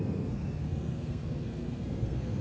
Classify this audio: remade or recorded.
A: remade